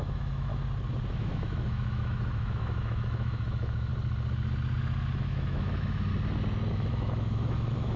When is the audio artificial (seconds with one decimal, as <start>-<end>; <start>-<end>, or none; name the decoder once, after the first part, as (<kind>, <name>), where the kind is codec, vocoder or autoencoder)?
0.0-0.5 (autoencoder, DAC-VAE); 1.1-3.9; 5.2-6.1; 6.7-8.0